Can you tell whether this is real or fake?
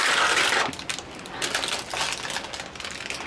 real